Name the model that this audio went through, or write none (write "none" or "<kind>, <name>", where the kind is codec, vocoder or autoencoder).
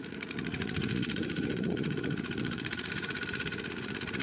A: vocoder, Vocos